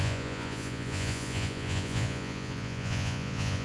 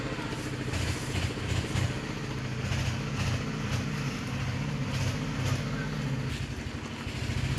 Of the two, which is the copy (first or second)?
first